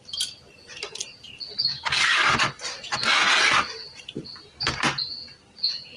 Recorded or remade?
recorded